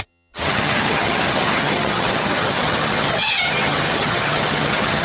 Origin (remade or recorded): remade